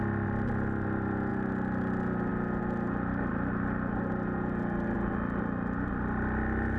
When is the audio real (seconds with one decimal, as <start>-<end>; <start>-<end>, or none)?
0.0-6.8